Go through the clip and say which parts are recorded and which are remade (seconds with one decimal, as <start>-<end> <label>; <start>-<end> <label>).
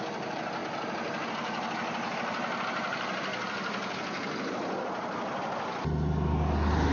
0.0-6.9 recorded